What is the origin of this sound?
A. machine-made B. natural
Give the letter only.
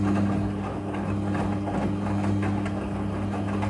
B